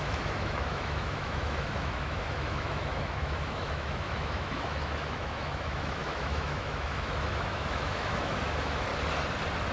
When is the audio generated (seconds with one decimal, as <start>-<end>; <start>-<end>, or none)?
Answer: 0.0-8.9